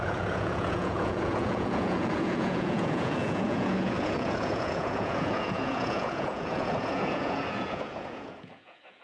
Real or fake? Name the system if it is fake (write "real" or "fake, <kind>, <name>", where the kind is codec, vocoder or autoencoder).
fake, vocoder, Vocos